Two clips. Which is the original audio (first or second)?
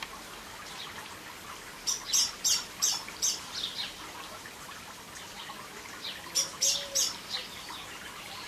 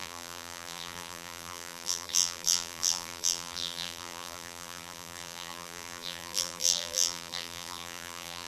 first